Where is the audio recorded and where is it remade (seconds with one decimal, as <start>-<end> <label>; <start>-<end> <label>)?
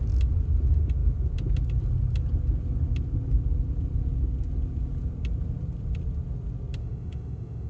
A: 0.0-6.8 recorded; 6.8-7.7 remade